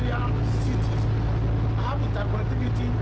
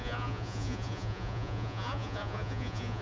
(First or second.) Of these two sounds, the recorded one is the first